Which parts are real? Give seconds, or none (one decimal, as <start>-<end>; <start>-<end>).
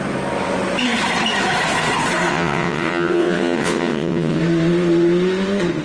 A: 0.0-2.3; 4.4-5.8